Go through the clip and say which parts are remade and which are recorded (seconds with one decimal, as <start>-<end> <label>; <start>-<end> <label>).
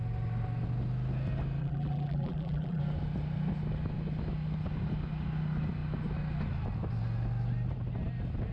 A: 0.0-1.6 recorded; 1.6-2.8 remade; 2.8-8.5 recorded